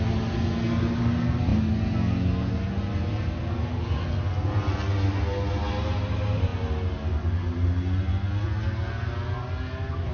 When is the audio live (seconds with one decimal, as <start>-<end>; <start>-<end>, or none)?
0.0-10.1